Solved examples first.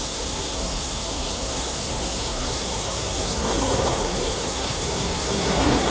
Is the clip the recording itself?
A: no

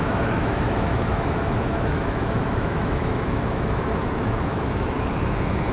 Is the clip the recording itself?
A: no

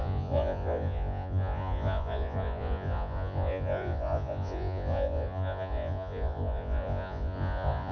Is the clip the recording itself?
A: no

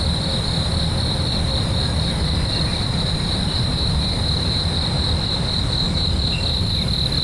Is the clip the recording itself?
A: yes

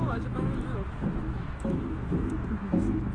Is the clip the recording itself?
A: no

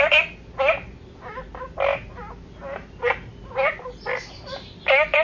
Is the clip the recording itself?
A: yes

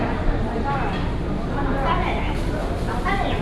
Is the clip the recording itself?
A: yes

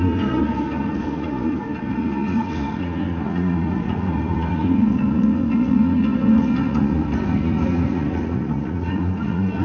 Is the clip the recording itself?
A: no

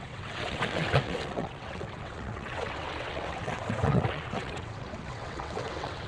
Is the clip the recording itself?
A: no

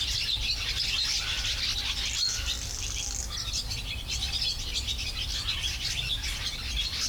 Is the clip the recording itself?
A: yes